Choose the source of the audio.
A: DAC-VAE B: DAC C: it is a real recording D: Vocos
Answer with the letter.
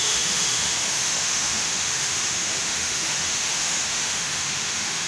A